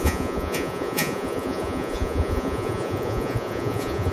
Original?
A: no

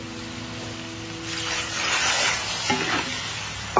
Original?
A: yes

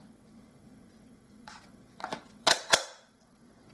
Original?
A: no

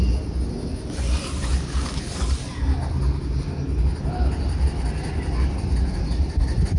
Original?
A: yes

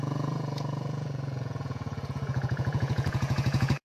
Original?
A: no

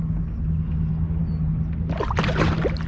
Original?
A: yes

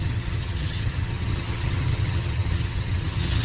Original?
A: no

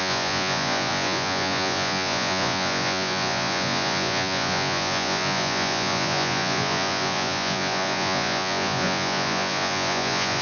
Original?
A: no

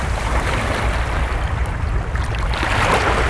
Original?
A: yes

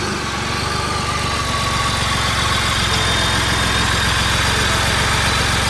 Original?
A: yes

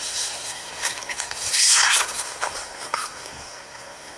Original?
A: no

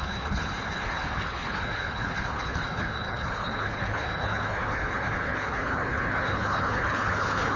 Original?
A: no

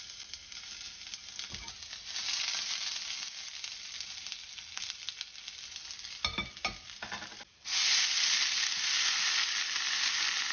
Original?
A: yes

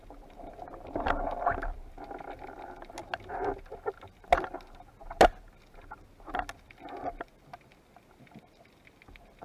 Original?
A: yes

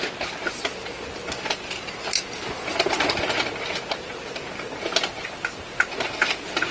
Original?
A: yes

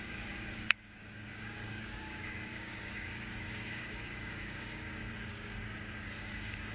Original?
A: no